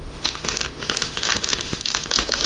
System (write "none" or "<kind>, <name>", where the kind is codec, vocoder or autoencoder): autoencoder, DAC-VAE